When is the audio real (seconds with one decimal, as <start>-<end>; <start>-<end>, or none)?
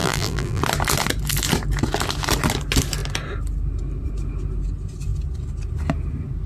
0.6-6.5